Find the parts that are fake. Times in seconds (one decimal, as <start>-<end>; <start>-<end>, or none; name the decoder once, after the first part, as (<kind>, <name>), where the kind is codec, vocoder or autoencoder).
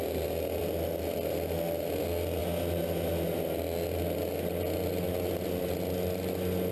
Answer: none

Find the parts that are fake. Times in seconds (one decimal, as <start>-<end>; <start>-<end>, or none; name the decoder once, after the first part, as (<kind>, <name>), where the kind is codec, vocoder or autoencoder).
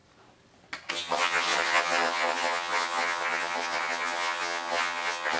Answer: 0.9-5.4 (vocoder, HiFi-GAN)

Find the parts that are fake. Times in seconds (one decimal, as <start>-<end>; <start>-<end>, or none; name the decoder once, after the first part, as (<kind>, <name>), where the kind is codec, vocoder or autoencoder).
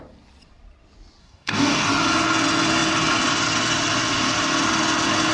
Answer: 1.2-1.9 (codec, DAC)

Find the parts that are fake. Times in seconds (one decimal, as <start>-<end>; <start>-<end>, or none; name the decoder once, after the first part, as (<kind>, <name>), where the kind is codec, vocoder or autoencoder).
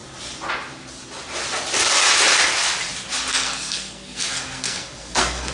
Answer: 3.3-5.5 (codec, SNAC)